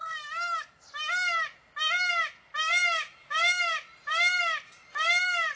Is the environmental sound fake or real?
real